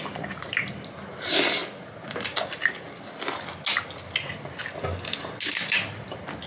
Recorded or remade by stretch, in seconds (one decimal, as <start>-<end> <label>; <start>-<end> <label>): 0.0-6.5 recorded